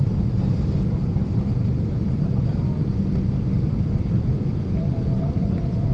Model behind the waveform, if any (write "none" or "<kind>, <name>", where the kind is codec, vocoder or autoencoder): vocoder, BigVGAN v2